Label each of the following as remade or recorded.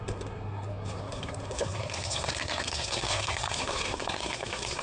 remade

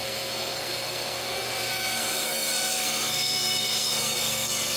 remade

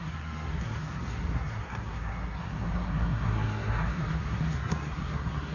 remade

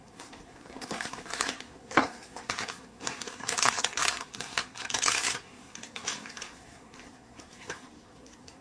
remade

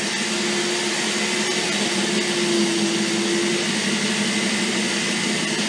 recorded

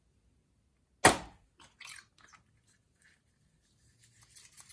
recorded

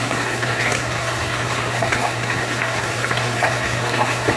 remade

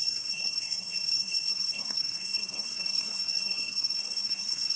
remade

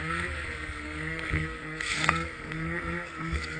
remade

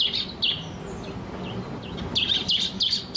recorded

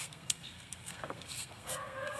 remade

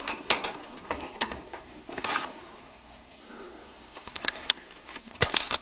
remade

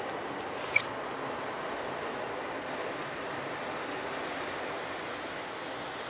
recorded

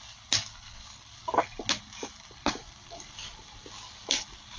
recorded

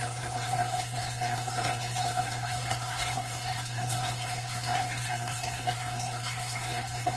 remade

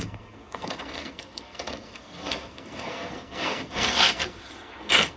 remade